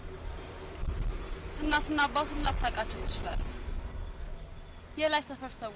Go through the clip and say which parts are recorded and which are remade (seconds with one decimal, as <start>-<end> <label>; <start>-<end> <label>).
0.0-0.9 remade; 0.9-2.4 recorded; 2.4-3.5 remade; 3.5-5.8 recorded